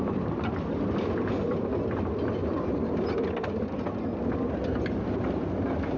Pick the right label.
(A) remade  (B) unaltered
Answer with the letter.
B